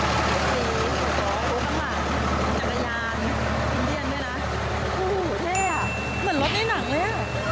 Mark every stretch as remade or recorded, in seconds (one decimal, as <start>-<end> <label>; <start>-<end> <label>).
0.0-3.2 recorded; 3.2-5.7 remade; 5.7-7.5 recorded